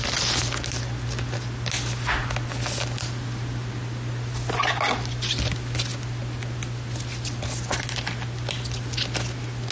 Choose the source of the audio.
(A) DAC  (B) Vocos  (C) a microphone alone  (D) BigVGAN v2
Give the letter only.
C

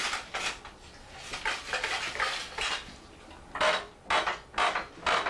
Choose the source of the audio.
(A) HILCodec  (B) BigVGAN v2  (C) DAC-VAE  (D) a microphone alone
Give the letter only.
D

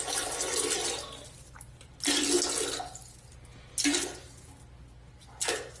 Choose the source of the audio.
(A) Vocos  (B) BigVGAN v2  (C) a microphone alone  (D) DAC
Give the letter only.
C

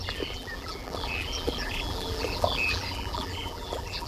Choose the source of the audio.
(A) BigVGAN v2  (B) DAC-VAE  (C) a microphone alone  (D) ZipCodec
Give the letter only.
A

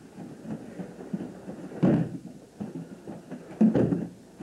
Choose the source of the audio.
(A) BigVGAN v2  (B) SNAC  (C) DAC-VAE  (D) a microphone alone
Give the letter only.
D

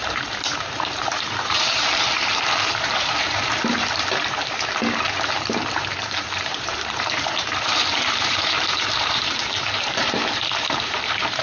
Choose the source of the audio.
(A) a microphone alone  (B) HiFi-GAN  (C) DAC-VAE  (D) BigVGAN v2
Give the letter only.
D